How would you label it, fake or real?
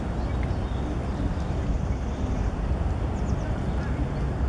real